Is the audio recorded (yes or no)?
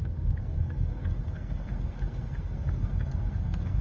no